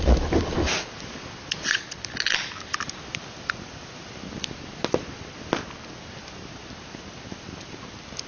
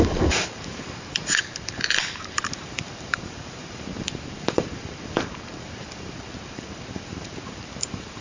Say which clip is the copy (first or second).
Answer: second